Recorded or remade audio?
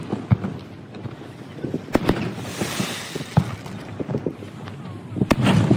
recorded